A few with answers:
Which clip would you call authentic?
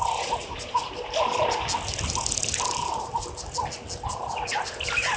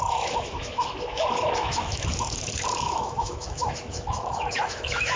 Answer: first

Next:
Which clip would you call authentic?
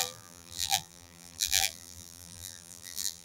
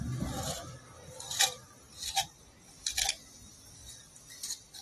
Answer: second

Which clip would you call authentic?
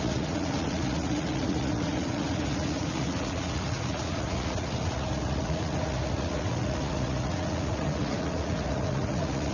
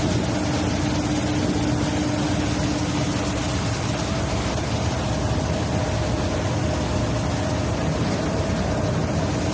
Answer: second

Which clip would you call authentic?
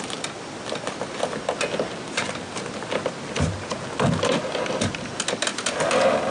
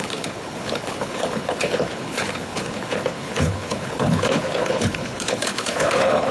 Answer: first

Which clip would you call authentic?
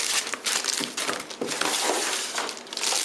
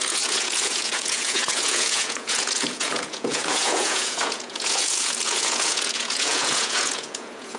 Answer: first